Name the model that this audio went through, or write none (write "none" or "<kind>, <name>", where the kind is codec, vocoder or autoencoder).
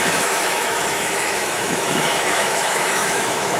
autoencoder, DAC-VAE